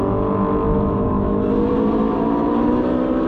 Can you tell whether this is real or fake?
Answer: real